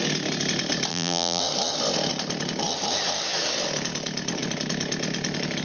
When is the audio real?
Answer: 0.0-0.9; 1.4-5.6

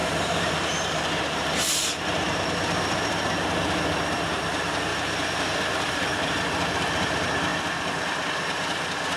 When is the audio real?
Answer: 3.3-4.9; 6.4-9.2

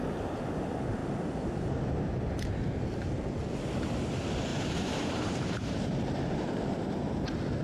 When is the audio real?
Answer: 0.0-4.5; 7.1-7.6